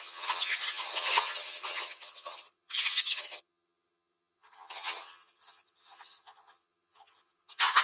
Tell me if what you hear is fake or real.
fake